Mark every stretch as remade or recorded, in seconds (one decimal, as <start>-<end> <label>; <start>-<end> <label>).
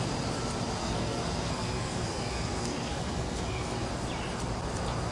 0.0-0.8 recorded; 0.8-3.9 remade; 3.9-5.1 recorded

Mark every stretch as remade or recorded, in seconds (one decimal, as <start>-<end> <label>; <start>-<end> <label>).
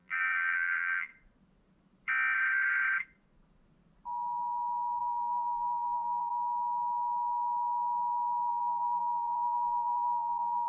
0.0-1.1 remade; 1.1-5.0 recorded; 5.0-6.3 remade; 6.3-8.5 recorded; 8.5-10.7 remade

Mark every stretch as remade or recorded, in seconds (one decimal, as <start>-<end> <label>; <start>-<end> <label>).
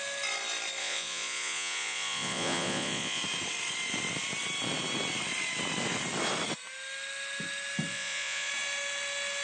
0.0-0.8 recorded; 0.8-3.2 remade; 3.2-7.9 recorded; 7.9-8.5 remade; 8.5-9.4 recorded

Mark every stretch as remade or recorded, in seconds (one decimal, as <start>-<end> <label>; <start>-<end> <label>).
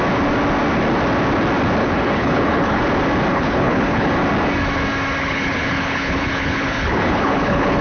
0.0-1.8 recorded; 1.8-2.8 remade; 2.8-3.3 recorded; 3.3-4.1 remade; 4.1-5.2 recorded; 5.2-7.8 remade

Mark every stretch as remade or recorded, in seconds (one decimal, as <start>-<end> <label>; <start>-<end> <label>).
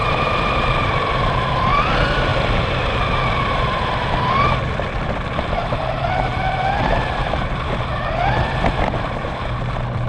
0.0-2.3 remade; 2.3-4.3 recorded; 4.3-6.3 remade; 6.3-6.8 recorded; 6.8-10.1 remade